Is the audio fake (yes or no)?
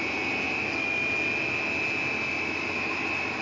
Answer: no